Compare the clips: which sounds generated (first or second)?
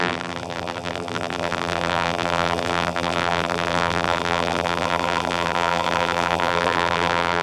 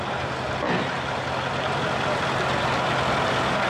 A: first